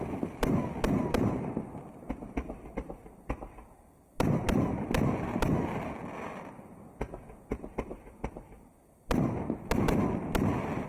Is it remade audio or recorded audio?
recorded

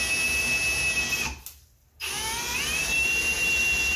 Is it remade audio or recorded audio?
recorded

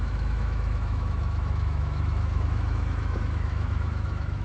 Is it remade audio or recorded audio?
remade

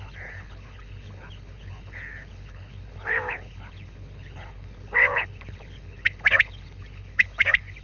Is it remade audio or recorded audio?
remade